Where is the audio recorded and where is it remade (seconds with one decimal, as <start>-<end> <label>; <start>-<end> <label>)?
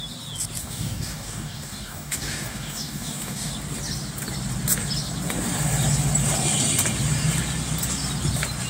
0.0-0.6 recorded; 0.6-3.5 remade; 3.5-8.7 recorded